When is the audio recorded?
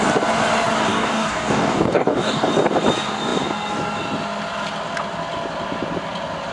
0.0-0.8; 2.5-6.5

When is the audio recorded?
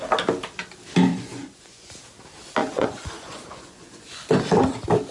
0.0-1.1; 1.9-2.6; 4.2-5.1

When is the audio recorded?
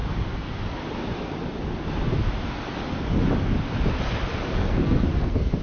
0.0-4.6